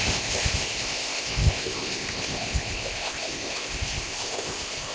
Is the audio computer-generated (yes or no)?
yes